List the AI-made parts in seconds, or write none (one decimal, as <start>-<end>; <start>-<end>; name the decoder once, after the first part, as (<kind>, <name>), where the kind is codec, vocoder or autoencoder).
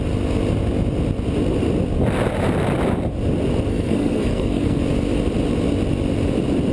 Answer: 3.7-4.8 (codec, SNAC)